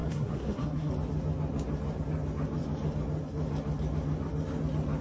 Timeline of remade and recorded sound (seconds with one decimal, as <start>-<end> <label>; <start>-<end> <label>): 0.0-0.9 remade; 0.9-5.0 recorded